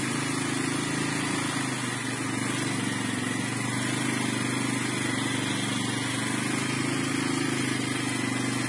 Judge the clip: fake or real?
real